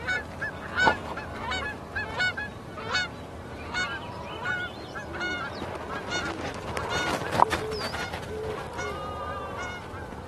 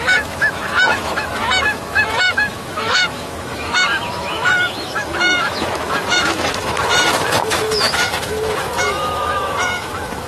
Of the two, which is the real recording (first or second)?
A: first